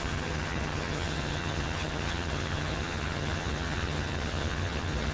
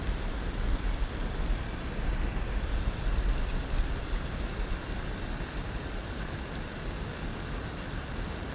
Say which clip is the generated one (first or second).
first